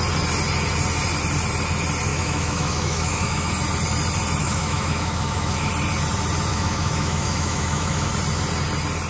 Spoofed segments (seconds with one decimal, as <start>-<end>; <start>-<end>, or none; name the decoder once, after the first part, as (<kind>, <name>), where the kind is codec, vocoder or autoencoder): 2.1-3.5 (autoencoder, DAC-VAE); 4.4-5.7; 6.5-8.1

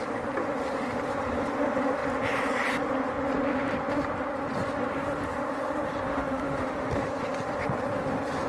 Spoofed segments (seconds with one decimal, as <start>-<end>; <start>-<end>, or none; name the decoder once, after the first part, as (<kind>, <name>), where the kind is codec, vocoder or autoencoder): 6.1-6.9 (autoencoder, DAC-VAE)

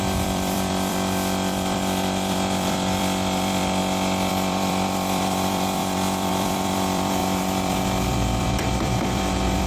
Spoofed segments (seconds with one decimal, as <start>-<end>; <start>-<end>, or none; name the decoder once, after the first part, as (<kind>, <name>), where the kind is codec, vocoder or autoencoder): 0.0-3.8 (vocoder, BigVGAN v2); 4.3-9.7